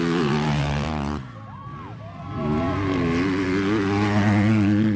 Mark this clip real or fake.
real